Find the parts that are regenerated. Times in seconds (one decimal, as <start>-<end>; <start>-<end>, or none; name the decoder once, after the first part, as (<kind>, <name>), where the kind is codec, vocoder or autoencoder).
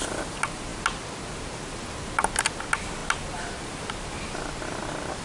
none